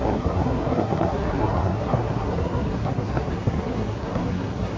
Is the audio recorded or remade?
remade